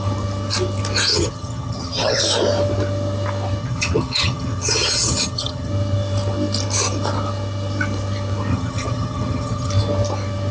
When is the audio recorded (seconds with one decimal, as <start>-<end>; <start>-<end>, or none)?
0.0-1.1; 2.2-3.6; 5.7-8.5; 9.7-10.5